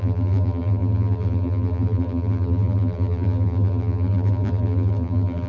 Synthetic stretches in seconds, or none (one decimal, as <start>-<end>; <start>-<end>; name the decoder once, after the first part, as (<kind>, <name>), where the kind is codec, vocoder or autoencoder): 0.0-5.5 (vocoder, BigVGAN v2)